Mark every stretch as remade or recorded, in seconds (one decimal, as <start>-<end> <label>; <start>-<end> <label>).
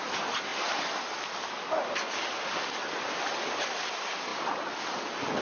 0.0-5.4 recorded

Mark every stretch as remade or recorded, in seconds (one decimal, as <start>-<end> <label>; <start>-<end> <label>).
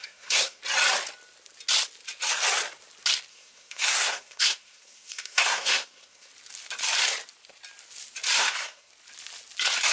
0.0-0.6 remade; 0.6-3.3 recorded; 3.3-6.3 remade; 6.3-8.4 recorded; 8.4-8.9 remade; 8.9-9.9 recorded